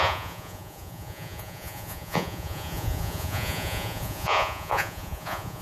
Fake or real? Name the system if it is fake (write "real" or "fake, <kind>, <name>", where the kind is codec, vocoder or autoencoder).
fake, vocoder, Vocos